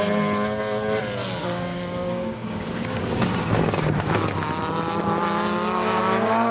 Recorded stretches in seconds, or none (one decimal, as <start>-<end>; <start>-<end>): 0.0-1.4; 3.3-6.0